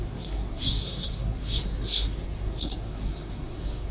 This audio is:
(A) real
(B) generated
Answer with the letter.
B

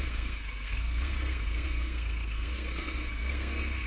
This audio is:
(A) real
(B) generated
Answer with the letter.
B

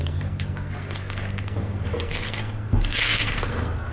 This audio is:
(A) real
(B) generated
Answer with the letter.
B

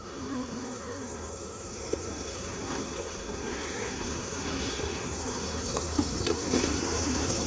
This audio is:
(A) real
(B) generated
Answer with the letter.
B